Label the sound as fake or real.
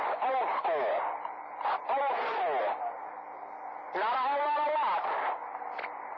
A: real